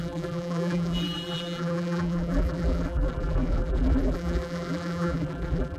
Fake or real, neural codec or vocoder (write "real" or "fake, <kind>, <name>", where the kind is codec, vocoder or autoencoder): fake, vocoder, BigVGAN v2